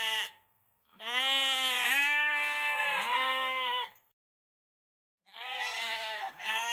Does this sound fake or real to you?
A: fake